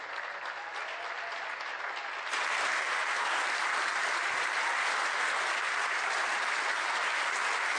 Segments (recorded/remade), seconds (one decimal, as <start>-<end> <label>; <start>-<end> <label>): 0.0-3.0 recorded; 3.0-5.8 remade; 5.8-7.8 recorded